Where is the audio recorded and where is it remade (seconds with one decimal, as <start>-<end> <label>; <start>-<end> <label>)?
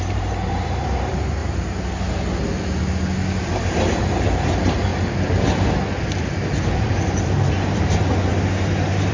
0.0-1.4 remade; 1.4-3.4 recorded; 3.4-4.9 remade; 4.9-6.7 recorded; 6.7-8.3 remade; 8.3-9.1 recorded